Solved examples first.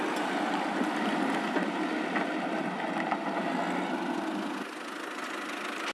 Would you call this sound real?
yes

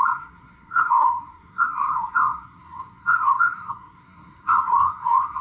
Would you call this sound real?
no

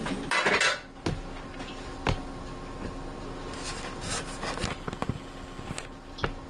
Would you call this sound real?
yes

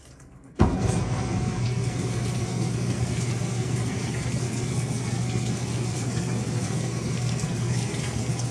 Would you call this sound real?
no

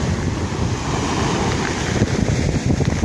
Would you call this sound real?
yes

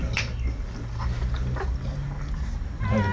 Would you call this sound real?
yes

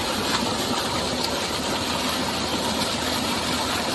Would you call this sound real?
yes